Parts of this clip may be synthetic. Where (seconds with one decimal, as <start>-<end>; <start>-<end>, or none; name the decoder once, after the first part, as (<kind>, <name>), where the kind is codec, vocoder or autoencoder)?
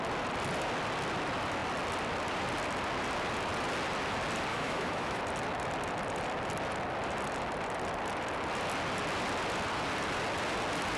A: 4.5-5.2 (autoencoder, DAC-VAE)